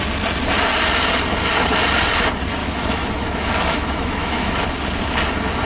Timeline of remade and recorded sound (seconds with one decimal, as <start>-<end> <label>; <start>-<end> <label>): 0.0-2.6 recorded; 2.6-4.5 remade; 4.5-5.6 recorded